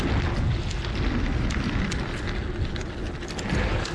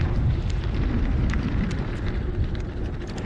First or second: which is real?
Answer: first